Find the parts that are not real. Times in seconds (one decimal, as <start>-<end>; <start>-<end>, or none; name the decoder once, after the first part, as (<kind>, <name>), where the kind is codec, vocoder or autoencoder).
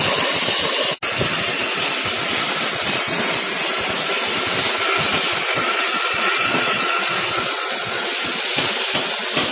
5.6-8.5 (vocoder, Vocos)